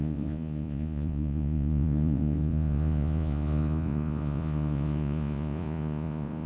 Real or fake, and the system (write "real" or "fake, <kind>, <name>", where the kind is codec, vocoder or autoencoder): fake, vocoder, Vocos